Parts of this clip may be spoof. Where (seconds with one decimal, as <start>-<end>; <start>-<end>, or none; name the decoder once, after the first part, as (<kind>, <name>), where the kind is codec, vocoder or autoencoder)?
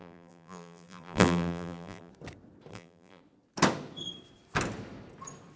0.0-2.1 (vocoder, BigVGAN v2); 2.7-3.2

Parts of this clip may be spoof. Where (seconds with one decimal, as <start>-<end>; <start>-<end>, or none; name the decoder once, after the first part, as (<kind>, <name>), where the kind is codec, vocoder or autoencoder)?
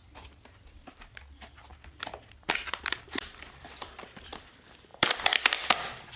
0.6-1.7 (vocoder, BigVGAN v2); 2.7-6.2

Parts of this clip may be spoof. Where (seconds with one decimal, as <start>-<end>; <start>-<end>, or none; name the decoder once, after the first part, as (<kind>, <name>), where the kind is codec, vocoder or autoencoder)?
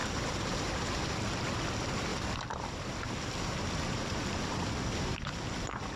0.0-1.0 (vocoder, BigVGAN v2)